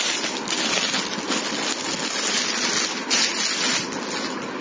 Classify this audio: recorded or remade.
recorded